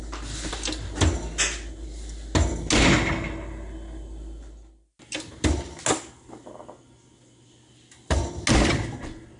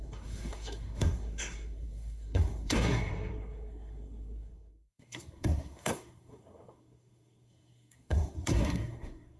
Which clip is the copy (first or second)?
second